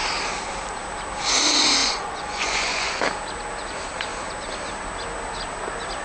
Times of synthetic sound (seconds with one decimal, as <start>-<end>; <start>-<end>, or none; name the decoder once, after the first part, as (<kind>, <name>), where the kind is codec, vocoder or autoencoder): 1.8-3.0 (vocoder, Vocos)